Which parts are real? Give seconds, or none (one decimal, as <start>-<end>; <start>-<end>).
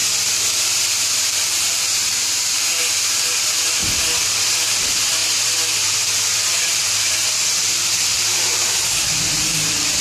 0.0-0.5; 3.8-4.5